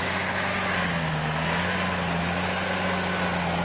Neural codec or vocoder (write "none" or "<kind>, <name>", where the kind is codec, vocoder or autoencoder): none